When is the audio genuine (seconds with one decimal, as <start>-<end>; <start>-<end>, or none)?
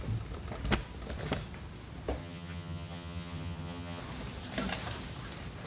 0.0-2.2; 4.0-5.7